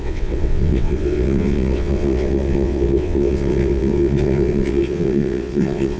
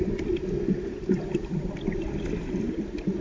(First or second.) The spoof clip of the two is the first